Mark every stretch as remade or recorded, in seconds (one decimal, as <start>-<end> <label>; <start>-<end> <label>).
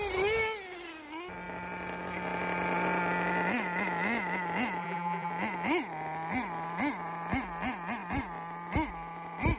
0.0-4.8 recorded; 4.8-5.3 remade; 5.3-9.6 recorded